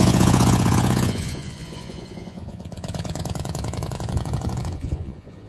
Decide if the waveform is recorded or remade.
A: remade